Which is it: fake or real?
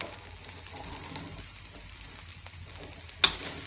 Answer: real